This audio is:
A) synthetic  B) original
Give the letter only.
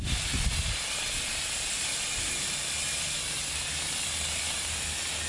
B